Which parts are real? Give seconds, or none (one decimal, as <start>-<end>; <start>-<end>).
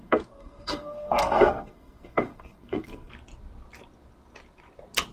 3.1-5.1